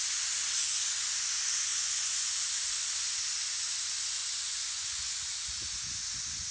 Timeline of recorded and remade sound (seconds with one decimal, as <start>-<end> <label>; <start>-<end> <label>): 0.0-1.7 recorded; 1.7-2.4 remade; 2.4-4.2 recorded; 4.2-5.3 remade; 5.3-6.5 recorded